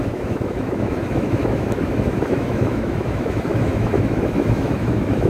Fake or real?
fake